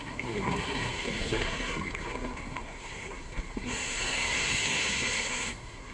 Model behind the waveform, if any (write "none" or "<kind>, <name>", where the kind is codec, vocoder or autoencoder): codec, SNAC